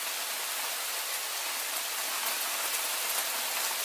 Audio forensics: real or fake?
real